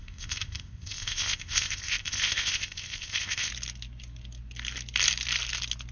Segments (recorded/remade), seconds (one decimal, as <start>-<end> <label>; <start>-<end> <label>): 0.0-3.5 remade; 3.5-5.9 recorded